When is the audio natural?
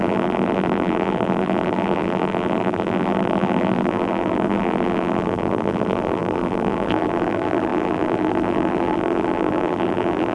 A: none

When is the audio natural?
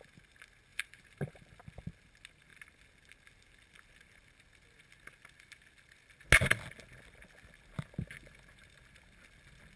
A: 0.0-0.7; 1.4-9.8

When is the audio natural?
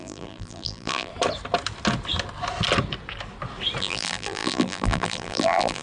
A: 1.1-3.8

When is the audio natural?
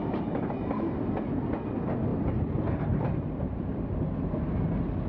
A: 0.6-2.1; 4.0-5.1